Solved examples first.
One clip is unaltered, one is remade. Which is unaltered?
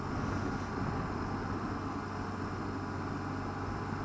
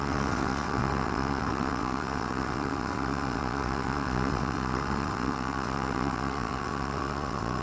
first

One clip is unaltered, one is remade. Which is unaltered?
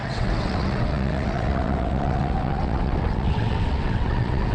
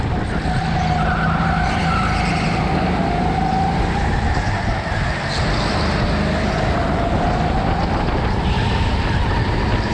second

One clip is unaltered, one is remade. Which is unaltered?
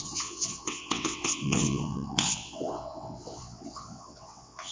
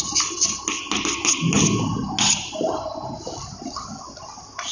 second